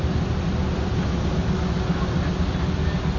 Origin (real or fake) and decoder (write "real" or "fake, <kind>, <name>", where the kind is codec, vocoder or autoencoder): real